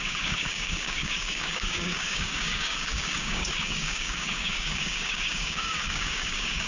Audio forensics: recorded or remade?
remade